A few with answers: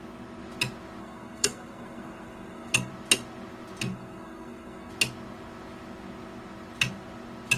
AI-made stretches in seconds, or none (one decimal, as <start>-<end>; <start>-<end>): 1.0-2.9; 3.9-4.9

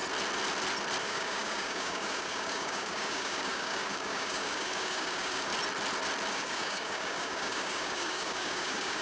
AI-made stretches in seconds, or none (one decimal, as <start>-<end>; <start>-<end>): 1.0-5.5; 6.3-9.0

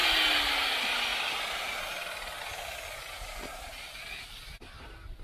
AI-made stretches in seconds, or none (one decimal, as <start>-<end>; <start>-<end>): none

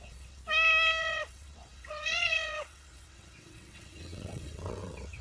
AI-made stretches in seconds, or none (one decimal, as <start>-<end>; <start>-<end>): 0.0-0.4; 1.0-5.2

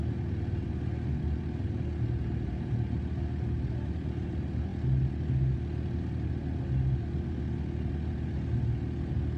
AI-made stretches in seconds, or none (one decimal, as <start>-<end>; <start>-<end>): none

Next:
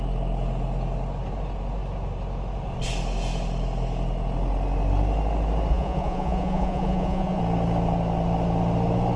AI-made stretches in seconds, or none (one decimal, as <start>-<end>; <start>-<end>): 5.7-7.4

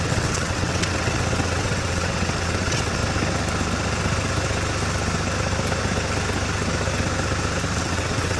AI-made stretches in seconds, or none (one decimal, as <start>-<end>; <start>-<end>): 0.0-3.0; 7.8-8.4